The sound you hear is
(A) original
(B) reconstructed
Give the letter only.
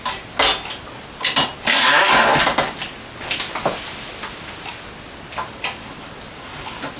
A